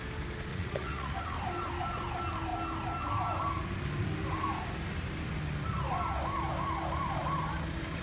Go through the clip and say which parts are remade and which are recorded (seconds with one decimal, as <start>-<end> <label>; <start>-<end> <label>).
0.0-0.5 recorded; 0.5-1.2 remade; 1.2-8.0 recorded